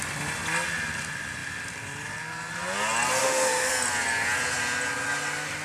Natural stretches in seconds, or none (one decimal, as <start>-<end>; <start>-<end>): 0.0-3.2; 3.7-5.6